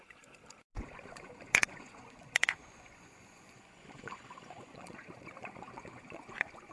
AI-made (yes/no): yes